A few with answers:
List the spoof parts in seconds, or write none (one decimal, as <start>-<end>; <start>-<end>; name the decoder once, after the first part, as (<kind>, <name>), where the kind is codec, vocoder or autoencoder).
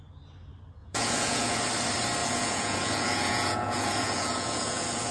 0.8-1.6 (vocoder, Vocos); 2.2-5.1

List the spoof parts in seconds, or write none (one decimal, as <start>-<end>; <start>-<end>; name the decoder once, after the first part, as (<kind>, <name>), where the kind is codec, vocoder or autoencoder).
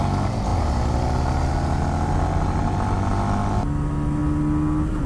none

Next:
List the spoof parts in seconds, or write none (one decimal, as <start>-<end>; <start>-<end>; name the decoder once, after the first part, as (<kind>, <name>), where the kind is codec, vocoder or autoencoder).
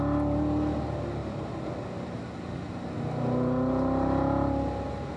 none